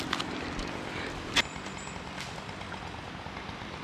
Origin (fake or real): real